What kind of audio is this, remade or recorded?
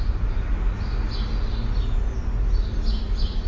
recorded